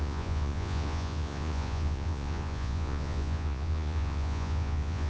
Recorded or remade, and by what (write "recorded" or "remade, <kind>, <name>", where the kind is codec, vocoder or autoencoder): remade, vocoder, Vocos